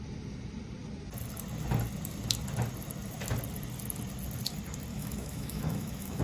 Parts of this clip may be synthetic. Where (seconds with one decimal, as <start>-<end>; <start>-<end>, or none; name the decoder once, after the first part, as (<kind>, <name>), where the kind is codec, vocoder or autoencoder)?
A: 4.9-6.2 (autoencoder, DAC-VAE)